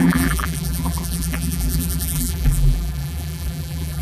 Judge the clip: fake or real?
fake